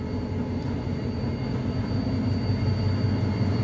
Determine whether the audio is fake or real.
real